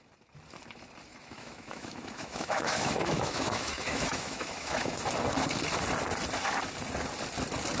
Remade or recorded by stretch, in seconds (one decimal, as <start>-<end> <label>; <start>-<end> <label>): 0.0-1.1 recorded; 1.1-5.0 remade; 5.0-7.8 recorded